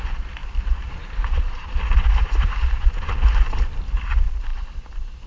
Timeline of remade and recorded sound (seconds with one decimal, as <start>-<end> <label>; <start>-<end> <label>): 0.0-0.4 recorded; 0.4-3.6 remade; 3.6-5.3 recorded

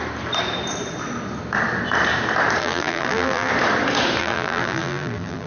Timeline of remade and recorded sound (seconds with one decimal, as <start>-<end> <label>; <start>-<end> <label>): 0.0-2.6 recorded; 2.6-3.5 remade; 3.5-4.2 recorded; 4.2-5.5 remade